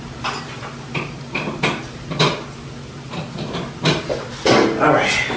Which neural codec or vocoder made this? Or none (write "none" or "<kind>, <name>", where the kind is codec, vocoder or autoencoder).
none